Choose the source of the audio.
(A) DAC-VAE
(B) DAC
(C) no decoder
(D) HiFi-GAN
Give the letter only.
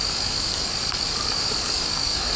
B